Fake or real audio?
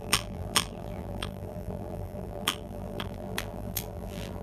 fake